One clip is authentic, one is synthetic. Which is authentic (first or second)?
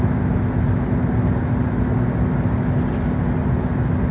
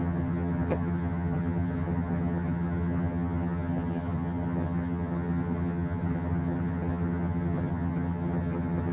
first